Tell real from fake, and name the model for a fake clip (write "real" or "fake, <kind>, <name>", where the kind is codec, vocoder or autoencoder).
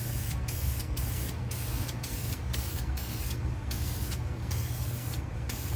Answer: fake, codec, SNAC